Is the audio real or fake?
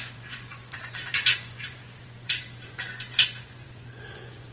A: fake